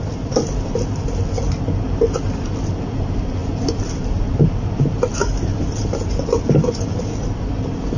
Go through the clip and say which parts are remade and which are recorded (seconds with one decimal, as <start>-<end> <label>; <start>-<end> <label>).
0.0-8.0 recorded